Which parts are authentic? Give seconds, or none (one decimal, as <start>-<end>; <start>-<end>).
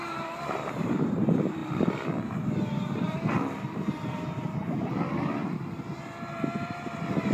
none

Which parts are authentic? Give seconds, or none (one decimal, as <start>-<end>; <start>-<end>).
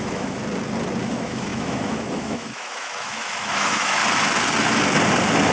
0.4-1.0; 4.0-5.5